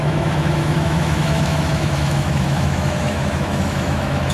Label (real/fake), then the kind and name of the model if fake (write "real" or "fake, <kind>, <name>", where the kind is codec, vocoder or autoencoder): fake, autoencoder, DAC-VAE